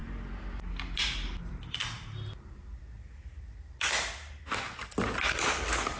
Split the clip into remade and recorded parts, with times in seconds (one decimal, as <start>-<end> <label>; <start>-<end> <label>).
0.0-6.0 recorded